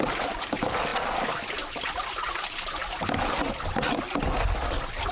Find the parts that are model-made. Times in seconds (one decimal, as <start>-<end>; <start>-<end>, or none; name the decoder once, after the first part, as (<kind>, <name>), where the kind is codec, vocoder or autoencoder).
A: none